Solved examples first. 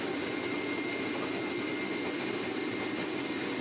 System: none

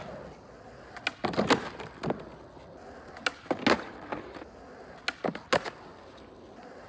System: none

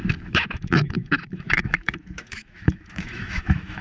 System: autoencoder, DAC-VAE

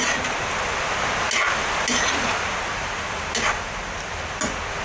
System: none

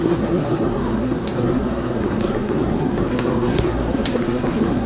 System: codec, SNAC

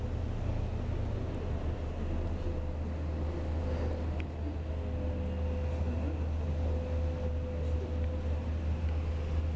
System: none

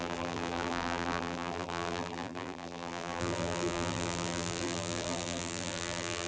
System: vocoder, BigVGAN v2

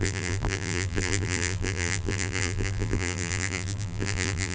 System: vocoder, BigVGAN v2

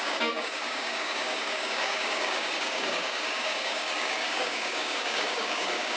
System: codec, DAC